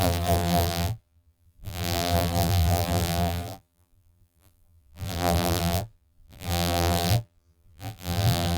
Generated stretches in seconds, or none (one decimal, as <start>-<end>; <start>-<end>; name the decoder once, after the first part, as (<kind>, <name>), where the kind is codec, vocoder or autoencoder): 0.0-8.6 (vocoder, BigVGAN v2)